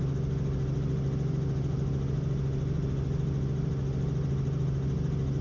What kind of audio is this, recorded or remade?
recorded